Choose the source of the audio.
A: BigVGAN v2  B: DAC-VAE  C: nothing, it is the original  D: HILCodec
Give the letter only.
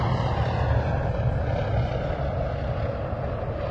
C